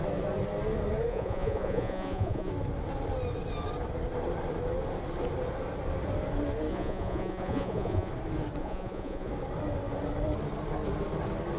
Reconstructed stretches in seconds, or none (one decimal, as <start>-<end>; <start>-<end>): 1.1-2.5; 6.7-8.1; 8.6-9.3